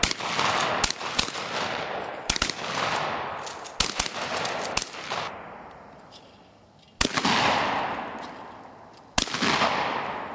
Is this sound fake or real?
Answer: real